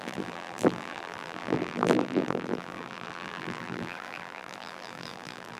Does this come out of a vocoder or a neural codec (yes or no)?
yes